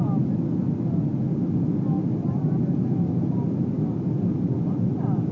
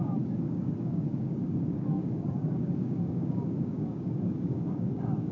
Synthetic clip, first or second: second